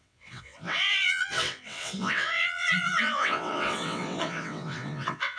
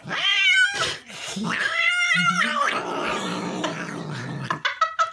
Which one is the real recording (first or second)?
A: second